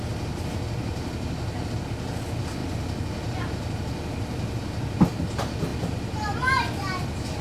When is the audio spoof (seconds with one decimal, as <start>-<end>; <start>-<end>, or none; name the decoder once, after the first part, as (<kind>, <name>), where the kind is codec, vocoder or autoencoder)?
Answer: none